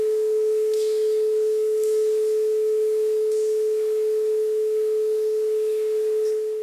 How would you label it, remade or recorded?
remade